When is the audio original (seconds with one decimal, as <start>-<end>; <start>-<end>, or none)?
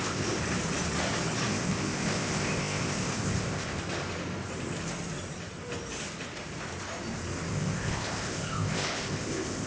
0.4-1.5; 3.8-7.5